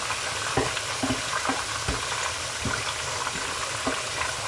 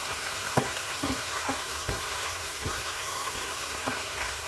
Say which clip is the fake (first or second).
second